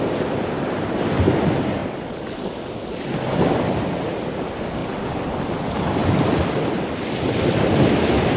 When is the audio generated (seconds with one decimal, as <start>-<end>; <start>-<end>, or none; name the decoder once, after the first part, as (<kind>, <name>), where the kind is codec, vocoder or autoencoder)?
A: 6.0-7.9 (vocoder, BigVGAN v2)